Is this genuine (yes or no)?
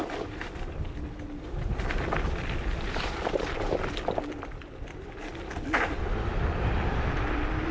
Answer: no